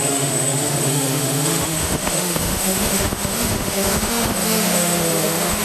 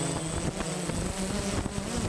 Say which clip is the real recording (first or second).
second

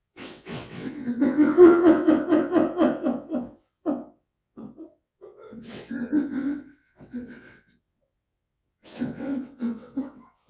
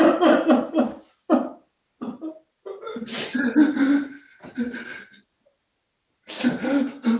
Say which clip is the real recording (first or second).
second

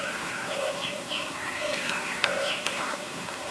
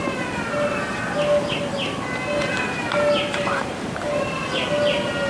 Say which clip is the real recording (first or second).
second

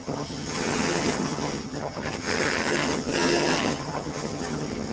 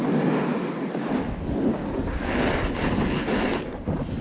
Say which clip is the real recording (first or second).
second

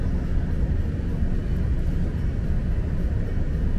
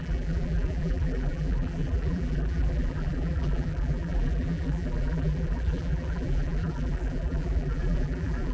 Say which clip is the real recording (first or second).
first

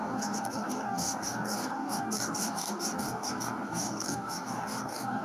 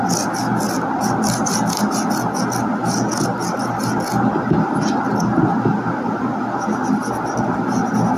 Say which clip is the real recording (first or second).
second